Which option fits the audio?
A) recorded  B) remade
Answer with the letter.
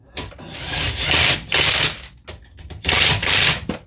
A